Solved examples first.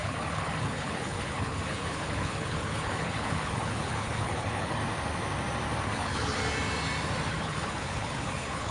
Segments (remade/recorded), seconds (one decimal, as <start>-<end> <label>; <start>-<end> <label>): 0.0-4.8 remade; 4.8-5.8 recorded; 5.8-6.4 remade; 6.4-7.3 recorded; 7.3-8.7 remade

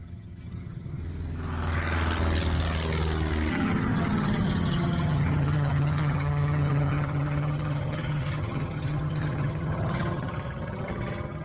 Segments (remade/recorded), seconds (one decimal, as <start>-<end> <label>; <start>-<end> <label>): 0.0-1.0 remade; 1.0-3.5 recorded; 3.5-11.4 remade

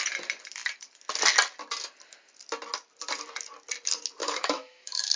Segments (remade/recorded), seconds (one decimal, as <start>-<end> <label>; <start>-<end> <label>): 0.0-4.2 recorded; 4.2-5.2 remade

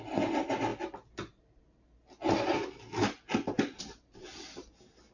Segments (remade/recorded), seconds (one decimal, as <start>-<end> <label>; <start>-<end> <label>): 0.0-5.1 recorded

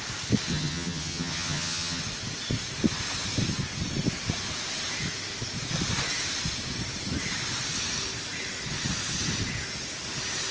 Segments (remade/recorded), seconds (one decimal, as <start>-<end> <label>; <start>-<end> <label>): 0.0-0.5 recorded; 0.5-2.0 remade; 2.0-10.5 recorded

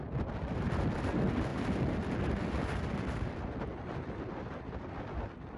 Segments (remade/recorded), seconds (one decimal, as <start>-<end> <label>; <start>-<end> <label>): 0.0-1.5 recorded; 1.5-4.9 remade; 4.9-5.6 recorded